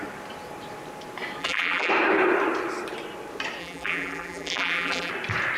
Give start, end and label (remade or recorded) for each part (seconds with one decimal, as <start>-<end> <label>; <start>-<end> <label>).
0.0-1.4 recorded; 1.4-1.9 remade; 1.9-3.6 recorded; 3.6-5.1 remade; 5.1-5.6 recorded